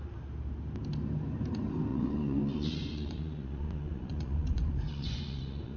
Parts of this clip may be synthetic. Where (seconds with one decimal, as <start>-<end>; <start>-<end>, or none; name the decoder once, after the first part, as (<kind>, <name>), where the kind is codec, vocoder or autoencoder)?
1.9-5.8 (vocoder, Vocos)

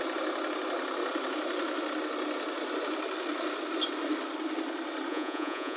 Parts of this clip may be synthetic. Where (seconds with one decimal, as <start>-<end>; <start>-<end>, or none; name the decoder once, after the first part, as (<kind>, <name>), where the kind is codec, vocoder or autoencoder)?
5.1-5.8 (vocoder, Vocos)

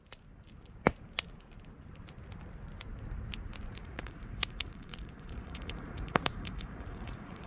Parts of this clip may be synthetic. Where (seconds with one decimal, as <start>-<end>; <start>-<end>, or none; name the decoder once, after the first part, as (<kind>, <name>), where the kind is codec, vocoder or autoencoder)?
3.7-7.5 (vocoder, Vocos)

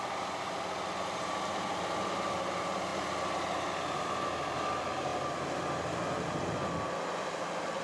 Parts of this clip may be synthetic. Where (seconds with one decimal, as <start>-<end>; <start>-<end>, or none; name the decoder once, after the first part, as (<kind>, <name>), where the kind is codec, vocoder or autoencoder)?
none

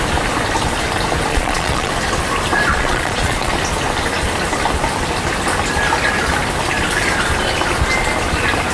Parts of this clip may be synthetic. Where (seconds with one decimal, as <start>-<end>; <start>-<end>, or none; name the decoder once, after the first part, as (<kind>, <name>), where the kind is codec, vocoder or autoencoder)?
1.3-1.9 (vocoder, Vocos); 2.7-3.5